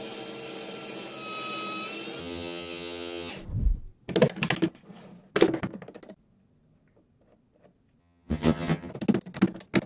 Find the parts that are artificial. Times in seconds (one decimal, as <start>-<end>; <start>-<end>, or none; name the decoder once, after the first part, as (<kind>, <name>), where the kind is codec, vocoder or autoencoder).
2.2-3.3 (vocoder, HiFi-GAN); 8.0-8.9